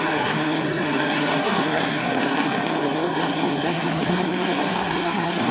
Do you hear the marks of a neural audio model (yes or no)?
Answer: yes